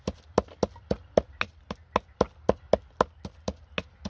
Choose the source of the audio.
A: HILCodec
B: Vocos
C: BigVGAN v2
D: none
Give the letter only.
D